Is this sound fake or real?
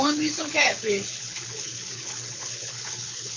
fake